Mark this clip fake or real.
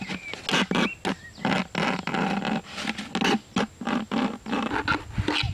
real